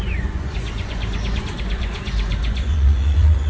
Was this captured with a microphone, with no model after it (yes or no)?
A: no